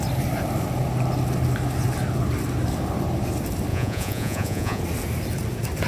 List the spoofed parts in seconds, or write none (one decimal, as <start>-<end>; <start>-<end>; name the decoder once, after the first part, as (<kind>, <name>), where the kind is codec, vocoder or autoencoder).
3.7-4.8 (vocoder, Vocos)